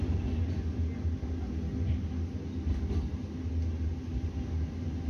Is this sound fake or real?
real